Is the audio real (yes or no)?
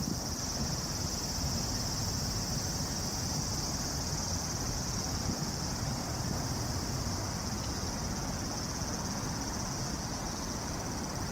yes